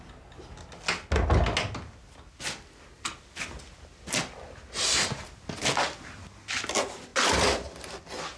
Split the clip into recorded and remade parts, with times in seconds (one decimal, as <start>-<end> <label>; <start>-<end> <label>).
0.0-8.4 recorded